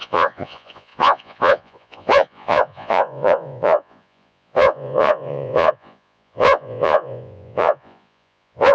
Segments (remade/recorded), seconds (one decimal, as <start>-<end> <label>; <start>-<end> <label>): 0.0-8.7 remade

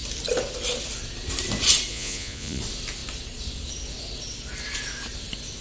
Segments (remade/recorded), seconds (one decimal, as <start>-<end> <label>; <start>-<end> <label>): 0.0-1.9 recorded; 1.9-2.6 remade; 2.6-5.6 recorded

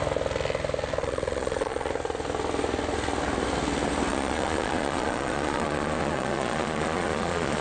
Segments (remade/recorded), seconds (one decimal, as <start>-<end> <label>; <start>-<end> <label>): 0.0-1.0 recorded; 1.0-1.9 remade; 1.9-4.1 recorded; 4.1-7.6 remade

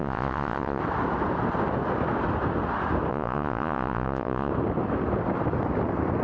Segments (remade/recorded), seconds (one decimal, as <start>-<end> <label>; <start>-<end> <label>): 0.0-0.8 remade; 0.8-3.1 recorded; 3.1-4.5 remade; 4.5-6.2 recorded

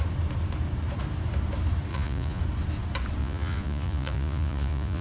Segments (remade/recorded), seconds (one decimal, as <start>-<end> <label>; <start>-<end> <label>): 0.0-1.9 recorded; 1.9-2.4 remade; 2.4-3.2 recorded; 3.2-5.0 remade

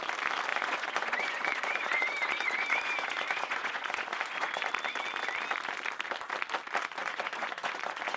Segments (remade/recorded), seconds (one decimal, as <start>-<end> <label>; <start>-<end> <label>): 0.0-0.5 recorded; 0.5-4.7 remade; 4.7-7.0 recorded; 7.0-8.2 remade

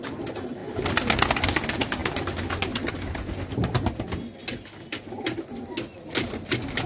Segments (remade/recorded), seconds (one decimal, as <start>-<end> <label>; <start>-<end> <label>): 0.0-6.9 recorded